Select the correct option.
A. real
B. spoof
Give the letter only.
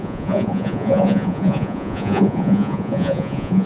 B